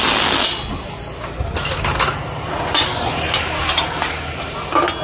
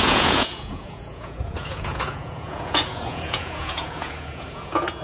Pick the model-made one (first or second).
second